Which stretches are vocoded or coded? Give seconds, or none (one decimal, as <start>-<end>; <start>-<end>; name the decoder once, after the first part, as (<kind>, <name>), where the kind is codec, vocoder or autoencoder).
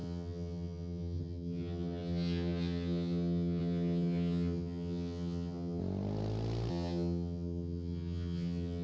0.0-5.8 (vocoder, HiFi-GAN); 6.7-8.8